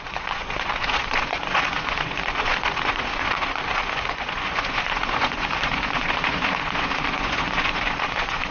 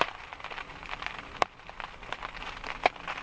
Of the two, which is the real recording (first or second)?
second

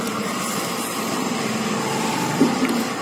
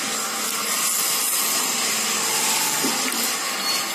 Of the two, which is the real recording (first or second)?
second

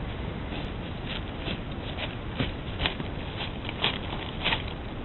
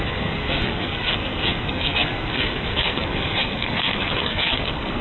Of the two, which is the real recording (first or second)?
first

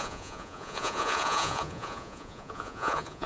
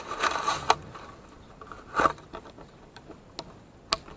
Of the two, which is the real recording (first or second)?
second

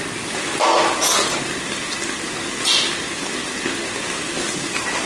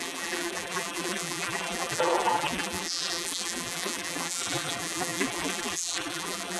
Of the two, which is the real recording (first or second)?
first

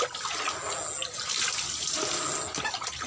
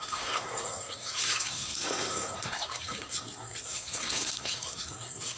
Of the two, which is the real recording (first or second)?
first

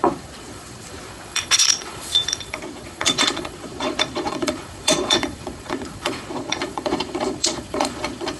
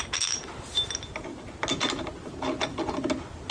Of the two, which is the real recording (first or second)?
second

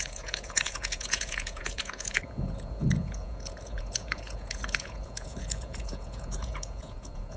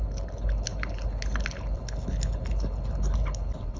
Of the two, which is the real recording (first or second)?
second